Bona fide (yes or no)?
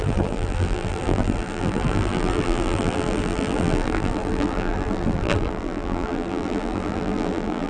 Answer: no